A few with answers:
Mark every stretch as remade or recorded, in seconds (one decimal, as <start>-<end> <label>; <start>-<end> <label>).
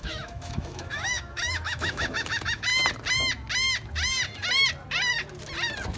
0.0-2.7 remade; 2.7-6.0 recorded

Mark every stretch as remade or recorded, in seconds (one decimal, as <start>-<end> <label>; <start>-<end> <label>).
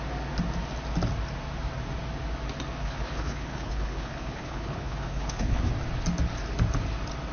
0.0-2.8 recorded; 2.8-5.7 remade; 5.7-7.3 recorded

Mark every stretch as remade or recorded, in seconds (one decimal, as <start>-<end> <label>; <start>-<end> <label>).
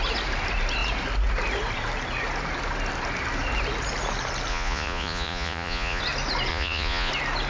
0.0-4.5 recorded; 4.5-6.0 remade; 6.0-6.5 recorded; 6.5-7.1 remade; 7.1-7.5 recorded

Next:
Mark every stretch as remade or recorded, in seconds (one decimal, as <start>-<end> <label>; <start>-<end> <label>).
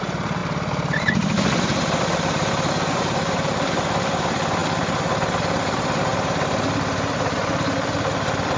0.0-8.6 remade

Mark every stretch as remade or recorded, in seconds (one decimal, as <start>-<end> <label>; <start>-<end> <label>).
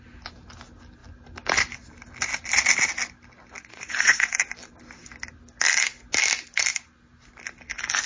0.0-3.6 recorded; 3.6-4.3 remade; 4.3-8.1 recorded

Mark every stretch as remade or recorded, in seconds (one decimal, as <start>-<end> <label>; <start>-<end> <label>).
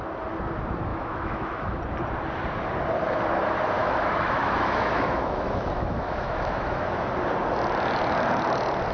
0.0-0.9 recorded; 0.9-1.8 remade; 1.8-3.8 recorded; 3.8-7.1 remade; 7.1-8.9 recorded